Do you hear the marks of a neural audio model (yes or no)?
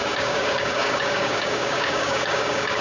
yes